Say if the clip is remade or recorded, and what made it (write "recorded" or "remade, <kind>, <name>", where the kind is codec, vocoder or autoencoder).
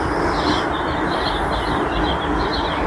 recorded